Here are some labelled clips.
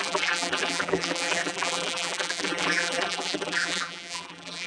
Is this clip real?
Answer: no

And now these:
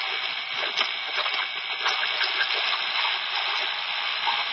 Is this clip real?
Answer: yes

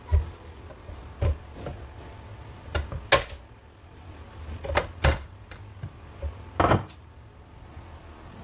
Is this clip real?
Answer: yes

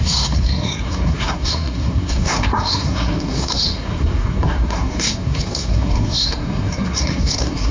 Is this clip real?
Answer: no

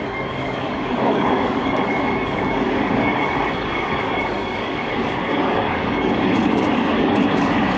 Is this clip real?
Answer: no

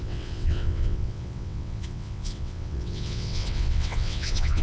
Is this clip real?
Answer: no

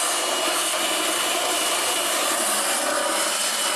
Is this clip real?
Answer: yes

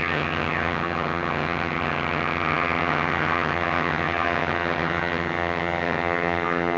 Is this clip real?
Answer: no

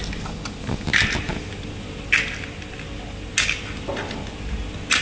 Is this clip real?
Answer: yes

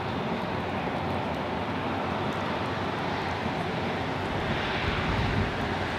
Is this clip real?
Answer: yes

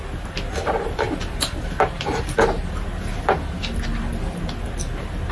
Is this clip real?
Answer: yes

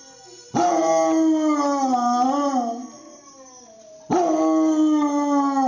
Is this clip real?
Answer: yes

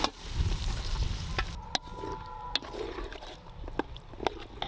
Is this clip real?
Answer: yes